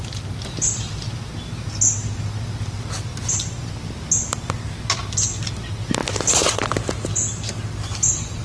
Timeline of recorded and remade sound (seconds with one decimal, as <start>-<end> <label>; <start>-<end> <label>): 0.0-8.4 recorded